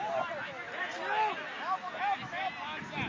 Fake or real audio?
real